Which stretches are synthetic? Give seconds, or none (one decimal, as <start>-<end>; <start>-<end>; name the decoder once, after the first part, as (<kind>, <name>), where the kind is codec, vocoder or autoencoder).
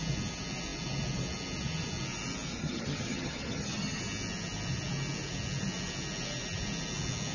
2.6-4.0 (vocoder, HiFi-GAN)